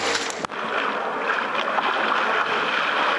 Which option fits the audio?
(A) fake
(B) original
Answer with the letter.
B